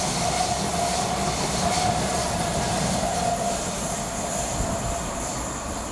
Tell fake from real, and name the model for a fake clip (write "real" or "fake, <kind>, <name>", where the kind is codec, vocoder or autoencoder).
real